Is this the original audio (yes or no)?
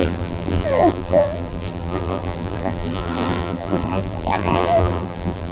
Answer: no